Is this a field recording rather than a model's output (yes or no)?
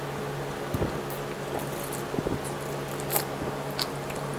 yes